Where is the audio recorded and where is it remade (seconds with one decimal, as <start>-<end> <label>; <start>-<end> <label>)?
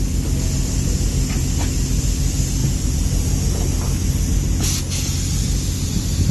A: 0.0-6.3 recorded